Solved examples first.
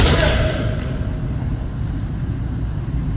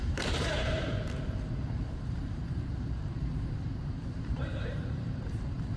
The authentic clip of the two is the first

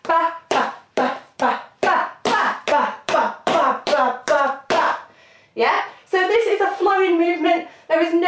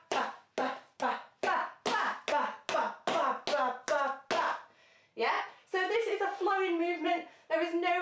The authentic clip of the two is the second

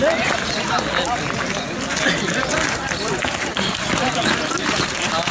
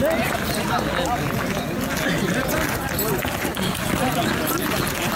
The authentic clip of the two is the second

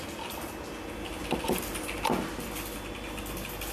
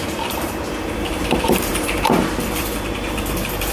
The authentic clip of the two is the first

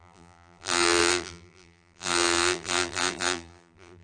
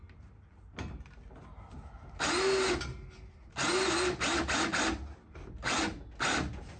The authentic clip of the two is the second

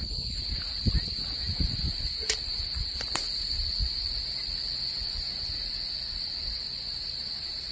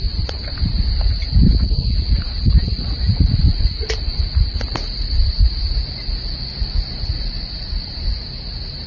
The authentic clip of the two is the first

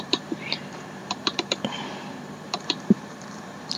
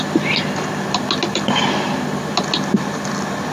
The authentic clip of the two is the second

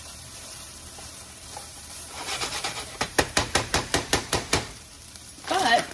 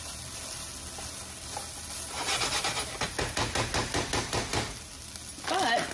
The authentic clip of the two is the second